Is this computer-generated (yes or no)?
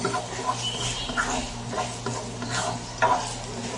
no